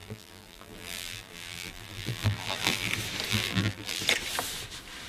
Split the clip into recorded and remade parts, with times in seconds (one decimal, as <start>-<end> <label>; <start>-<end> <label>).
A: 0.0-2.9 remade; 2.9-3.3 recorded; 3.3-4.0 remade; 4.0-5.1 recorded